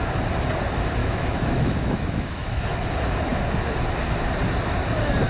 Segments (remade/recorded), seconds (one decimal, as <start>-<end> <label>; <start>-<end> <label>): 0.0-1.0 recorded; 1.0-2.6 remade; 2.6-5.3 recorded